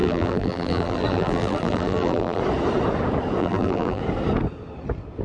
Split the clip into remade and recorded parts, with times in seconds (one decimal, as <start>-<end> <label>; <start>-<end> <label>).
0.0-2.4 remade; 2.4-3.4 recorded; 3.4-4.0 remade; 4.0-5.2 recorded